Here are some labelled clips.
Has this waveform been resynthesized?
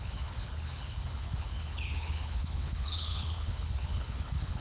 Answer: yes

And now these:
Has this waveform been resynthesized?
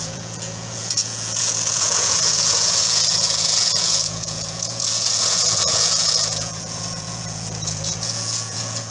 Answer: yes